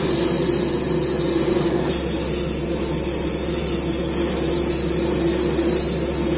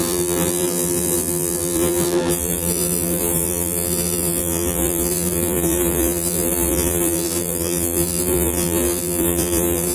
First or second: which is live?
first